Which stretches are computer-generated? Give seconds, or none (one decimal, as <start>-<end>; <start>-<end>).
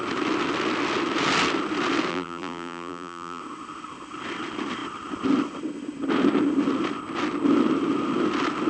2.1-3.4